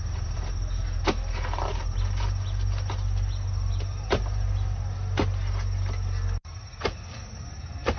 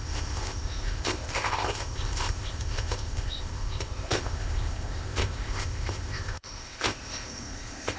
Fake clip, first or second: second